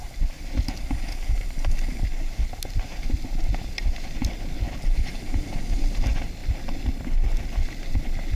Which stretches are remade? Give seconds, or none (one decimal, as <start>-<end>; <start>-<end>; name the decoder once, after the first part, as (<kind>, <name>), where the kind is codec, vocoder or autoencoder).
none